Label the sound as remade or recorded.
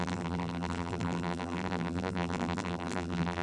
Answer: remade